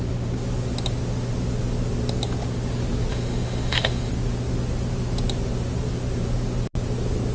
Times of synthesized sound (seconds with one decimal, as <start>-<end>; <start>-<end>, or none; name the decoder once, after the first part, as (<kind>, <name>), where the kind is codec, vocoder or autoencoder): 3.1-4.1 (autoencoder, DAC-VAE)